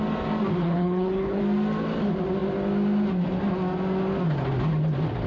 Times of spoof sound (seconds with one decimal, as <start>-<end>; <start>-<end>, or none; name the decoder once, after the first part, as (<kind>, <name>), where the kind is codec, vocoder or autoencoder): 0.6-1.4 (codec, HILCodec)